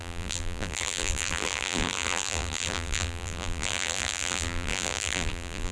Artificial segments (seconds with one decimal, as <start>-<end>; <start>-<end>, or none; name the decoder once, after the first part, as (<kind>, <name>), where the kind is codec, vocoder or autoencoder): 0.0-5.7 (vocoder, BigVGAN v2)